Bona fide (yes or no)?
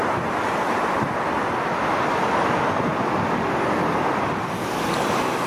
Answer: yes